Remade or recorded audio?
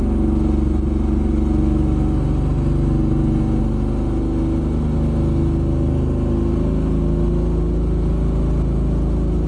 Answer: recorded